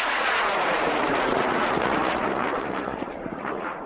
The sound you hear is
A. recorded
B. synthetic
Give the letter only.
B